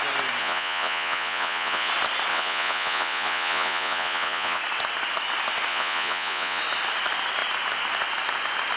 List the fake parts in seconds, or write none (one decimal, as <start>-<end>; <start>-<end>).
0.4-1.9; 2.3-4.6; 5.7-6.6